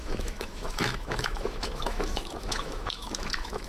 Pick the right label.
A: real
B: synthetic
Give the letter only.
B